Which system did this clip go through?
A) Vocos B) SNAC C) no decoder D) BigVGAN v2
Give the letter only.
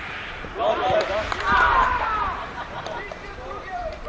D